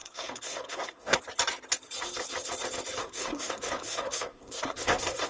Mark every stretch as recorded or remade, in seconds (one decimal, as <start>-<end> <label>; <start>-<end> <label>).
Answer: 0.0-1.2 remade; 1.2-3.0 recorded; 3.0-5.3 remade